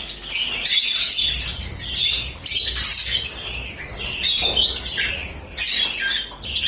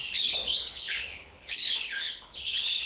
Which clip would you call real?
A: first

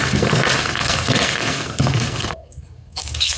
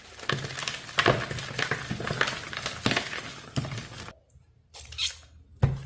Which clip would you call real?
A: second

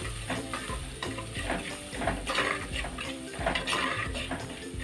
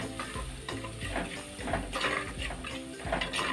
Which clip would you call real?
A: second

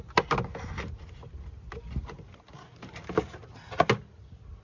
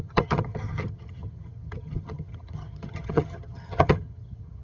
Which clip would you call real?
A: first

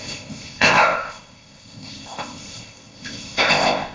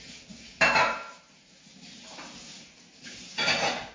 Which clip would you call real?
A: second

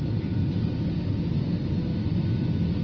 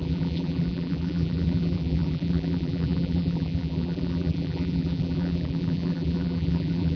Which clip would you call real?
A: first